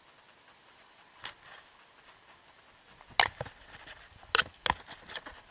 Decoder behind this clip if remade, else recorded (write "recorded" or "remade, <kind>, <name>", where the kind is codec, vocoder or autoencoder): recorded